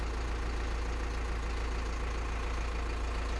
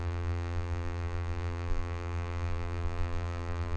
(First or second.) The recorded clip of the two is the first